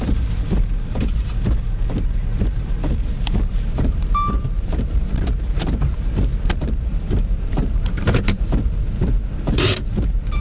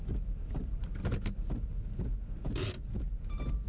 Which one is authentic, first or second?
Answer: second